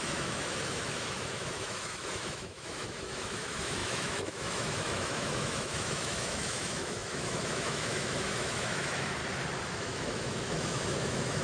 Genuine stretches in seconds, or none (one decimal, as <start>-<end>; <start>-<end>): 9.2-9.7